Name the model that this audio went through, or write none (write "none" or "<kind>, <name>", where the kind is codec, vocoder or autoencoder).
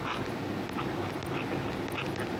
none